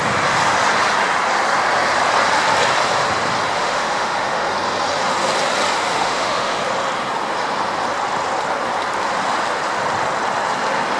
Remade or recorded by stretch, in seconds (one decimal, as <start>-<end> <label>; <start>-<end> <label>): 0.0-3.5 recorded; 3.5-4.5 remade; 4.5-5.9 recorded; 5.9-6.6 remade; 6.6-11.0 recorded